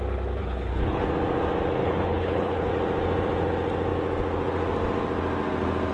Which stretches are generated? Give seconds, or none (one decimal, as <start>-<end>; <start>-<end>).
0.4-1.1; 1.8-2.7